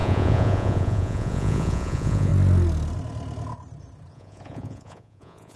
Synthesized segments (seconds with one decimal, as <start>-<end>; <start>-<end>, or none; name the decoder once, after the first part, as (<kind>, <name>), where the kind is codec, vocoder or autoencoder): 0.0-2.3 (vocoder, Vocos); 4.1-5.6